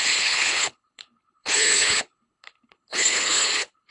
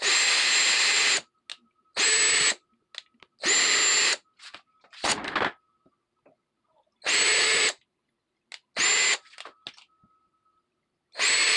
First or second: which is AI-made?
first